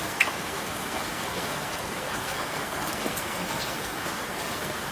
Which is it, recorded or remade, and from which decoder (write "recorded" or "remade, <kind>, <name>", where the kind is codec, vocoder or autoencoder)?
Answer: remade, codec, SNAC